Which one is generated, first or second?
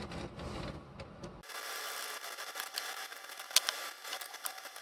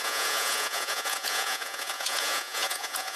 second